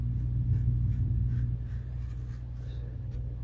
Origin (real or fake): real